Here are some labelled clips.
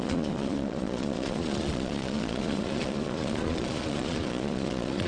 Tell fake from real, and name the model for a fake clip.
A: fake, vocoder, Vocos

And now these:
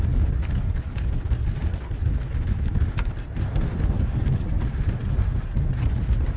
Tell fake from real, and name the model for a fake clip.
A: real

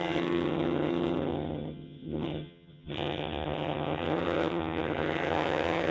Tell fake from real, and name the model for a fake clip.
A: fake, vocoder, HiFi-GAN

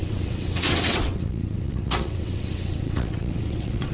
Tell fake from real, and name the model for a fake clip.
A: fake, vocoder, WaveNeXt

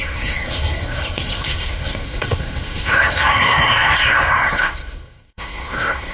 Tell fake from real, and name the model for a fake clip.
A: fake, codec, SNAC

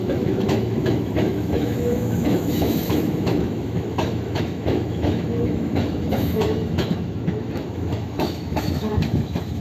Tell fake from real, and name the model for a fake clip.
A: fake, autoencoder, DAC-VAE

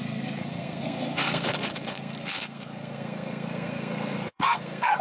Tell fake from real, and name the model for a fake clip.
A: fake, codec, SNAC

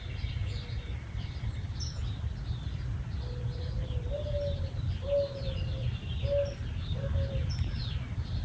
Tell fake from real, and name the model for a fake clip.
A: real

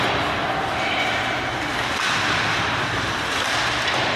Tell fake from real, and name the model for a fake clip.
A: real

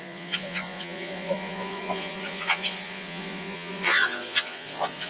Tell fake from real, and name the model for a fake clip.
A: fake, vocoder, Vocos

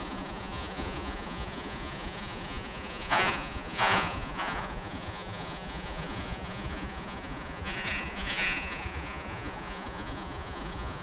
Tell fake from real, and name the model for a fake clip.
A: fake, vocoder, Vocos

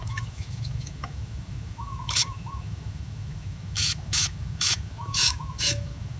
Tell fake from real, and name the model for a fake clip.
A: fake, autoencoder, DAC-VAE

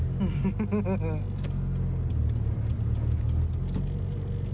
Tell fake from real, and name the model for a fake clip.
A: real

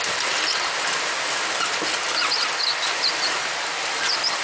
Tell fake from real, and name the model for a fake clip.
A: real